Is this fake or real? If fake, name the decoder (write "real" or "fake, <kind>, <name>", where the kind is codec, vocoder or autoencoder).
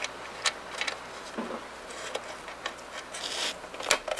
real